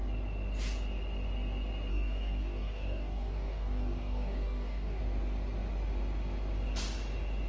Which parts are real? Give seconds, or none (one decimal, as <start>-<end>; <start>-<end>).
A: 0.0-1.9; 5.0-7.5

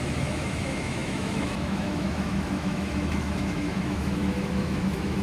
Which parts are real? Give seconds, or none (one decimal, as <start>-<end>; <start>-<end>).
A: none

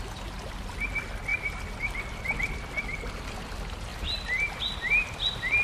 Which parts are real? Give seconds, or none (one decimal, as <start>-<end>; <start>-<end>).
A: 0.0-5.6